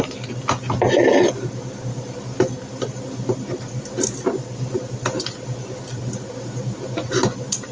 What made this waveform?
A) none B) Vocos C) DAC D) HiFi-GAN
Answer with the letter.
A